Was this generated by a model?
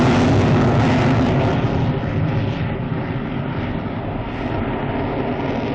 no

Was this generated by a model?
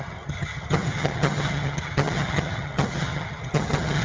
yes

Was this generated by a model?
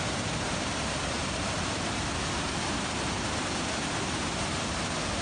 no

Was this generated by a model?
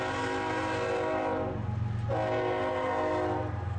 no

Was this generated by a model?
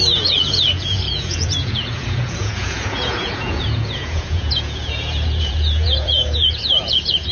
yes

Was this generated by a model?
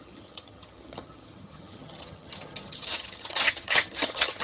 yes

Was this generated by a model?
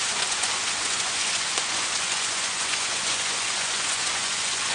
yes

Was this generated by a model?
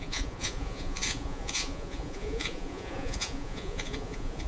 yes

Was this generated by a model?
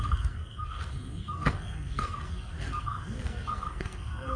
yes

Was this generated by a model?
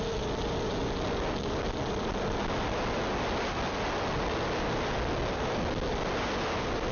no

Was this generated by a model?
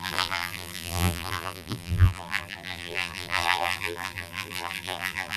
yes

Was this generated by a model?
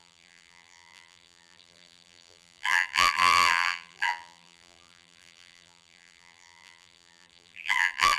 yes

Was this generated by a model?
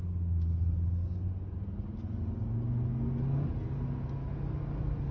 no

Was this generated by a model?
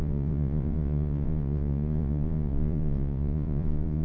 yes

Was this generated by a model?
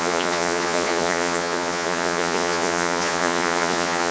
yes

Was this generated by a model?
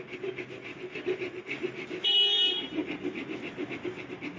no